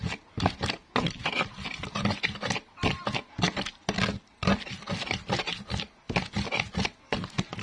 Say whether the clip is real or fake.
real